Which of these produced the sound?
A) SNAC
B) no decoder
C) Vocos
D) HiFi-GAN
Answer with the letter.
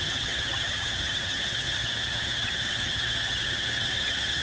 D